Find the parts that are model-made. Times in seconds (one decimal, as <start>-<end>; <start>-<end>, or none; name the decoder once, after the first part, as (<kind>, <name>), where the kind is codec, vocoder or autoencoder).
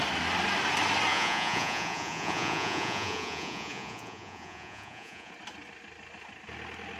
1.1-5.3 (vocoder, Vocos)